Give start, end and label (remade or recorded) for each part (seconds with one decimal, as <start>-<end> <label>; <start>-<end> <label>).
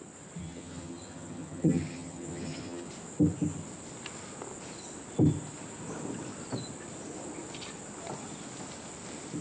0.0-0.4 recorded; 0.4-2.9 remade; 2.9-9.4 recorded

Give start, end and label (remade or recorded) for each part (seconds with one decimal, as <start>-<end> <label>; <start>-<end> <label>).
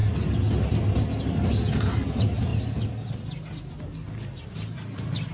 0.0-5.3 recorded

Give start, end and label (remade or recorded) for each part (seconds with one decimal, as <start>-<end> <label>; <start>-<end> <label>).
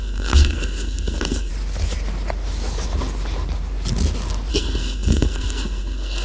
0.0-1.5 remade; 1.5-4.5 recorded; 4.5-6.2 remade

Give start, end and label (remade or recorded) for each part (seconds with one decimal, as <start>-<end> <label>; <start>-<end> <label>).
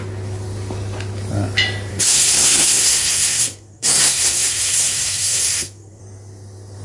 0.0-1.9 recorded; 1.9-6.0 remade; 6.0-6.8 recorded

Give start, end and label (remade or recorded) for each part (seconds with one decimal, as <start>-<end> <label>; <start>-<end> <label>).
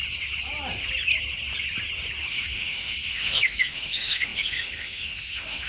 0.0-2.3 recorded; 2.3-5.7 remade